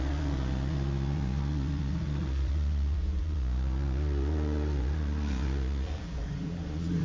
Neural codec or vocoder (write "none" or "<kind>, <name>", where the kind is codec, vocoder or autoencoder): vocoder, Vocos